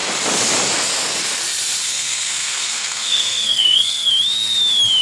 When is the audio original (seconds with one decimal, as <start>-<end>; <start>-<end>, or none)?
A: 0.0-1.8; 4.1-5.0